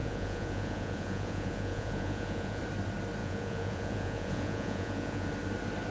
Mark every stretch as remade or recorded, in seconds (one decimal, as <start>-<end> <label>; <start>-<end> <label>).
0.0-2.6 remade; 2.6-3.2 recorded; 3.2-5.3 remade; 5.3-5.9 recorded